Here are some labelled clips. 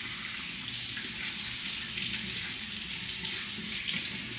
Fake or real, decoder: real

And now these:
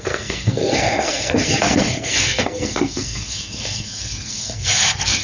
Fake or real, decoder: fake, codec, SNAC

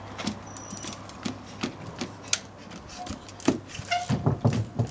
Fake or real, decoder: real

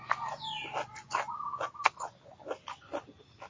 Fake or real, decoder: real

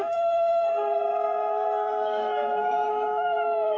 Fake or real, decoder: fake, codec, SNAC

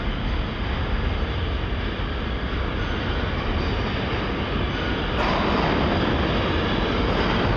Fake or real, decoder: real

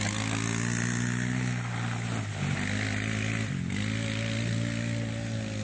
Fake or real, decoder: real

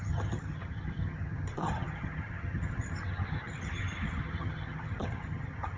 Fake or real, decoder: fake, vocoder, HiFi-GAN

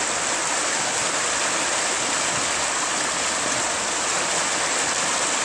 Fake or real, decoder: real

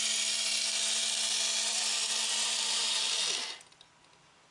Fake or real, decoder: real